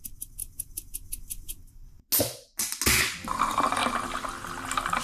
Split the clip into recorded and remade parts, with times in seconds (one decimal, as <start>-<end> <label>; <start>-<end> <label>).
0.0-5.0 recorded